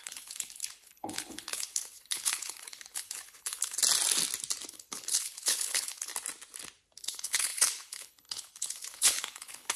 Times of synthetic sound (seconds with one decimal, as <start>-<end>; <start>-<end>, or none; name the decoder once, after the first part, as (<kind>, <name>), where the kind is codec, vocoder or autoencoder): 0.0-3.8 (codec, HILCodec); 4.7-6.1; 7.0-9.8